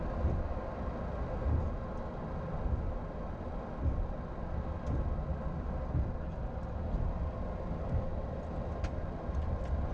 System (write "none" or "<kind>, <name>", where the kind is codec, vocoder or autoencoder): none